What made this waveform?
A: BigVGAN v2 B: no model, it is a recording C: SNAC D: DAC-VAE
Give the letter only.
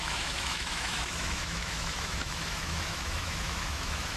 D